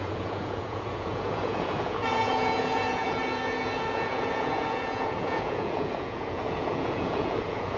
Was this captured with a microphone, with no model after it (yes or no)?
no